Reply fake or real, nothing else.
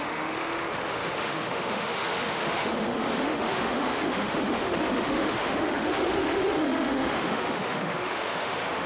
fake